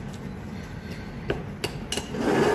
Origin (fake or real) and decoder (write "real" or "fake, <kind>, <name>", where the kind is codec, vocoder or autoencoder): real